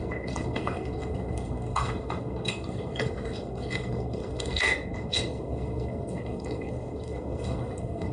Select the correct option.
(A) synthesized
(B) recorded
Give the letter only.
A